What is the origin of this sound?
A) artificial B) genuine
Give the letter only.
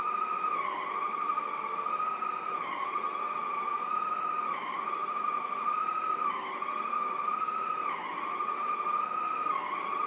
B